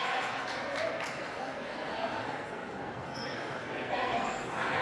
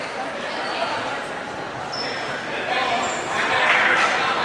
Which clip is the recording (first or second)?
second